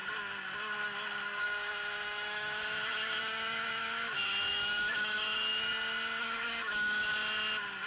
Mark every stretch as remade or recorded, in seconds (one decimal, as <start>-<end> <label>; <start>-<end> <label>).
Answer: 0.0-1.4 recorded; 1.4-5.7 remade; 5.7-6.2 recorded; 6.2-7.1 remade; 7.1-7.9 recorded